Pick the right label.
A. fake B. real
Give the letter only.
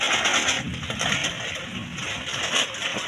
B